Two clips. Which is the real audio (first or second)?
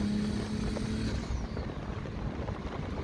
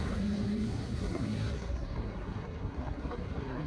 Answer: first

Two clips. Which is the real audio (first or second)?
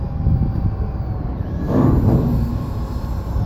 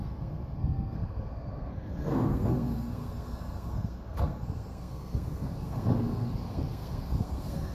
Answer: first